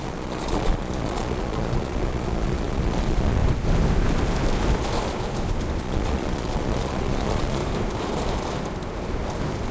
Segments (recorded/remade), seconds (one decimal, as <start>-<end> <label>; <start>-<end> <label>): 0.0-3.4 remade; 3.4-5.8 recorded; 5.8-7.6 remade; 7.6-9.7 recorded